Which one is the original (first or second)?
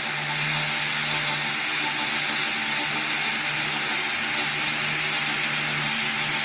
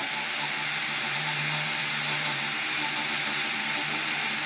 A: first